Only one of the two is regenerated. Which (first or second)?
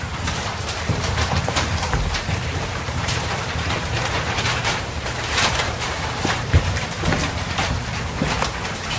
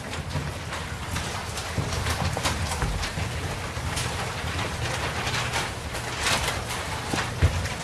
first